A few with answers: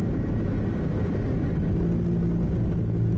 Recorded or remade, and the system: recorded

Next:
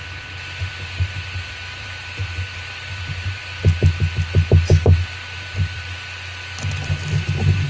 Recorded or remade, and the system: recorded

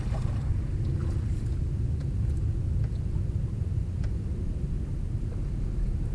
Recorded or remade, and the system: recorded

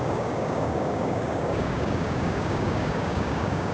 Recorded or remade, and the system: remade, codec, DAC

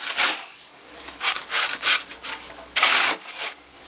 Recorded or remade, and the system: remade, codec, DAC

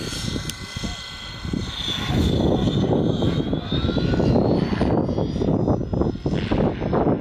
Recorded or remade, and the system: recorded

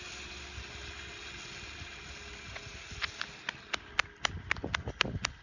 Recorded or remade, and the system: recorded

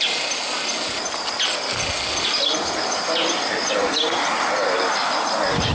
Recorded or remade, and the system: recorded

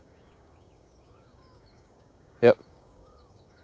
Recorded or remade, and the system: remade, codec, DAC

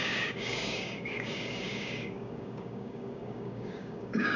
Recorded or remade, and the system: remade, codec, DAC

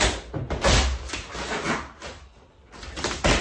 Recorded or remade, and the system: recorded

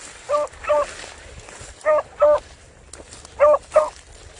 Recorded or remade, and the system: recorded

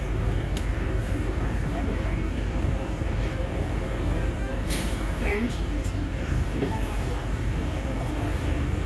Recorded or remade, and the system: remade, codec, DAC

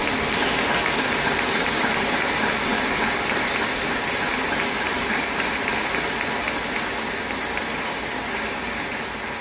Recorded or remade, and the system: recorded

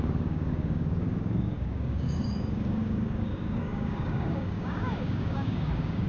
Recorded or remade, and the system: remade, codec, DAC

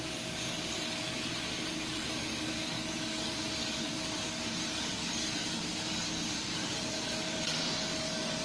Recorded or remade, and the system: remade, codec, DAC